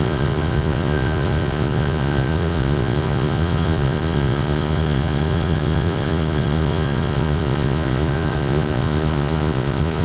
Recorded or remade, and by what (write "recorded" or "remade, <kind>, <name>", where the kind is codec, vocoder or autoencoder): remade, vocoder, Vocos